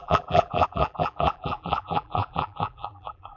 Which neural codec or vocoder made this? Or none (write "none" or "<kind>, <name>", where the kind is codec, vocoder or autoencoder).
vocoder, BigVGAN v2